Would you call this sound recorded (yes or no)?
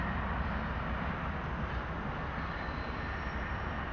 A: yes